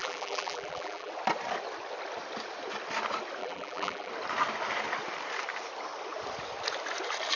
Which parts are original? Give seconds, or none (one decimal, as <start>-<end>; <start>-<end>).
1.1-3.4; 4.1-7.4